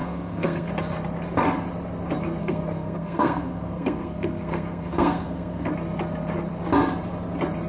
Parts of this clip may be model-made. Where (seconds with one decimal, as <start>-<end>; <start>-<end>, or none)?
0.0-0.7; 2.4-5.7